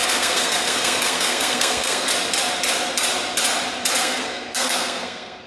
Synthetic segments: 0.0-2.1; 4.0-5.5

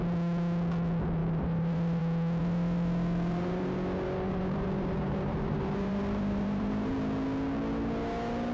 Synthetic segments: 1.2-2.0; 2.4-6.9

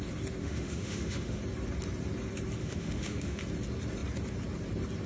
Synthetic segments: 0.4-1.4; 2.6-3.4

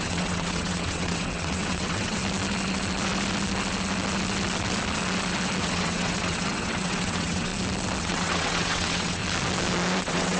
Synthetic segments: 0.0-2.2; 5.6-7.5; 8.0-9.2; 10.0-10.4

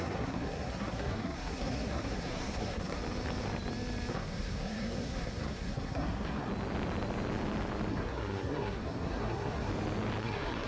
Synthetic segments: 0.0-3.0; 4.1-6.5; 7.9-9.7; 10.2-10.7

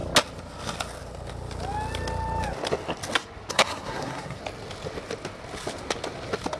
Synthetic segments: 3.5-4.4